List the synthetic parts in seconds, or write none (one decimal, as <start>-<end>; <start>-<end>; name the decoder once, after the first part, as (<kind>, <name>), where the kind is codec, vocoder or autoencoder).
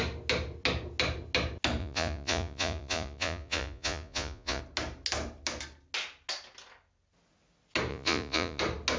1.8-4.6 (vocoder, Vocos); 7.9-8.6